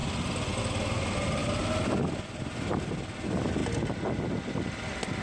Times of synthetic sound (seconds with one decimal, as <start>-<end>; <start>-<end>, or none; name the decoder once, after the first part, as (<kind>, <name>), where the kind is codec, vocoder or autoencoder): none